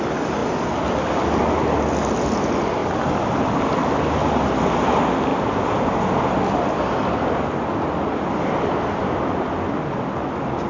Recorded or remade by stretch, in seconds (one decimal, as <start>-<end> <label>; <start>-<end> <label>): 0.0-10.7 recorded